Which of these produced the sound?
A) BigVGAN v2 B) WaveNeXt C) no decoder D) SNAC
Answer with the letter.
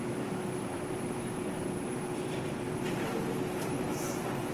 A